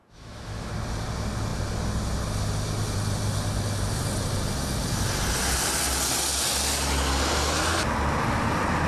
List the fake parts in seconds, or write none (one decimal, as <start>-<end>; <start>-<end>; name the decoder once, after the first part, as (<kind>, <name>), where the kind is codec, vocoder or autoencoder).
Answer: 0.0-0.7 (autoencoder, DAC-VAE)